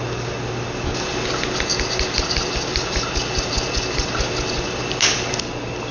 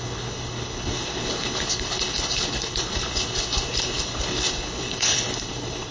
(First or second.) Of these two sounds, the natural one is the first